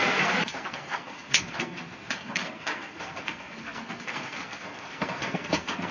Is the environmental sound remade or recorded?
remade